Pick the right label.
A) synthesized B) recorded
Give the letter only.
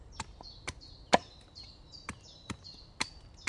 B